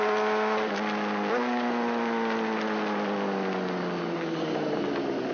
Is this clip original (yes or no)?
yes